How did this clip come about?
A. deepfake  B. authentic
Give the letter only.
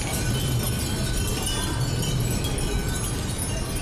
B